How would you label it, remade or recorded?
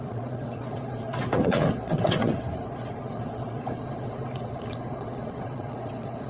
remade